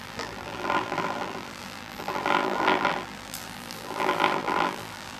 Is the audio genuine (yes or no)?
no